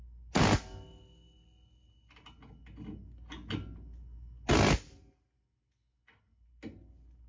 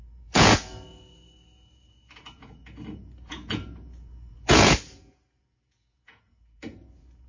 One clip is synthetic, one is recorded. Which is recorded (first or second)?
first